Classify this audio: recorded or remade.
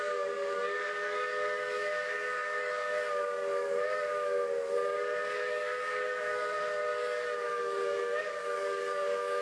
remade